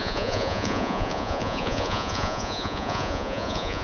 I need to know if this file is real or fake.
fake